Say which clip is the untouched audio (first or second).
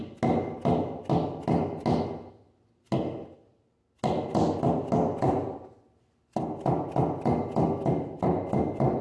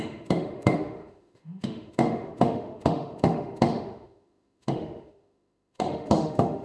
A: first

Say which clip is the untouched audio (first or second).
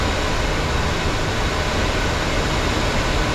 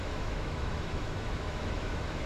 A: first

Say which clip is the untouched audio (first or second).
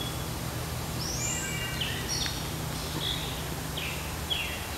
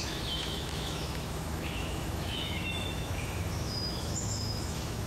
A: first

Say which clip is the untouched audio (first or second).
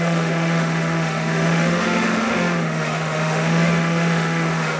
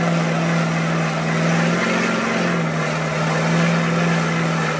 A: second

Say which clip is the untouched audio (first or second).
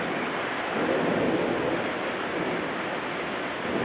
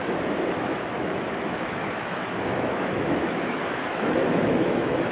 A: first